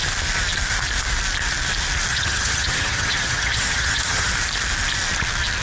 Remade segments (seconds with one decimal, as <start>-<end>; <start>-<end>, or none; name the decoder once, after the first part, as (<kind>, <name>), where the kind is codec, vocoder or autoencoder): 2.1-4.3 (vocoder, HiFi-GAN)